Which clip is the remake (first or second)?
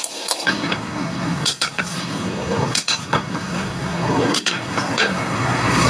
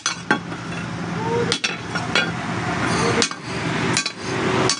first